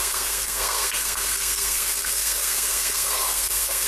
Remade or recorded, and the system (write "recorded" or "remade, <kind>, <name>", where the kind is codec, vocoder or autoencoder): remade, codec, SNAC